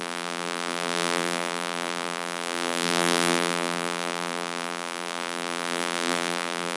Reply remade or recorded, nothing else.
remade